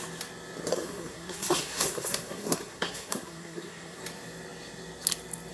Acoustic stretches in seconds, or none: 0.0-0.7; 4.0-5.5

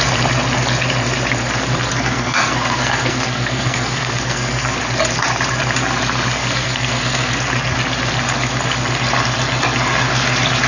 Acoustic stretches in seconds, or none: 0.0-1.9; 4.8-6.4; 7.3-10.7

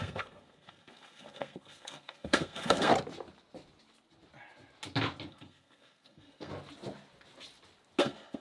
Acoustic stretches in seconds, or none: 2.9-5.3; 6.5-8.0

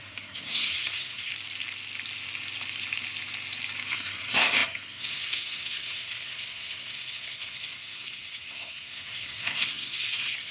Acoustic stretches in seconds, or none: 1.3-3.9

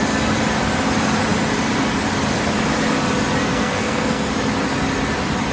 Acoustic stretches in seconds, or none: 0.0-3.4; 4.3-5.5